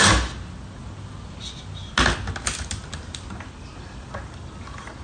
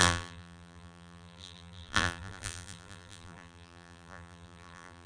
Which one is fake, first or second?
second